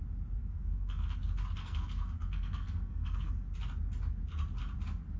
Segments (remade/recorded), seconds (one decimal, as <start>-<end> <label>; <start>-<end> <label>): 0.0-0.4 recorded; 0.4-1.2 remade; 1.2-1.6 recorded; 1.6-3.3 remade; 3.3-5.2 recorded